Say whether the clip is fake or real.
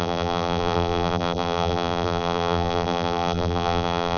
fake